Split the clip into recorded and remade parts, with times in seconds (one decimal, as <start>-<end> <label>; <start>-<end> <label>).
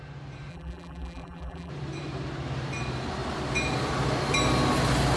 0.0-0.5 recorded; 0.5-1.7 remade; 1.7-5.2 recorded